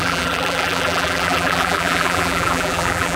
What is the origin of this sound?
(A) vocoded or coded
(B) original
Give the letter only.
A